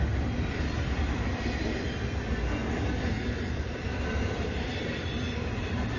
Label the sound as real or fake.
real